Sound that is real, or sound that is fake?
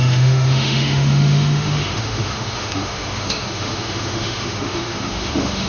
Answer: fake